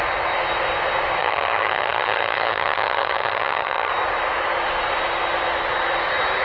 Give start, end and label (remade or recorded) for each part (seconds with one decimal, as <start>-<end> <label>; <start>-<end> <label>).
0.0-1.2 recorded; 1.2-3.9 remade; 3.9-6.4 recorded